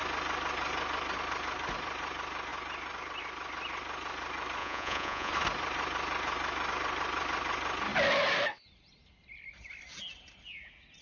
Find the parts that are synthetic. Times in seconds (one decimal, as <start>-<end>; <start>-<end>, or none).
4.6-5.3